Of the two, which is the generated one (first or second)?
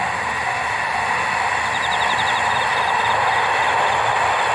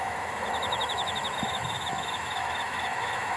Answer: second